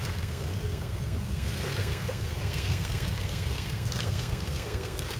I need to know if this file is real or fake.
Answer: fake